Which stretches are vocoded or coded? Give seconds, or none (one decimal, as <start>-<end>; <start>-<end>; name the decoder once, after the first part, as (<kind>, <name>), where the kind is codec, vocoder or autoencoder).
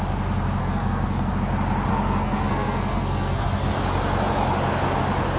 0.6-1.3 (codec, SNAC); 1.9-3.7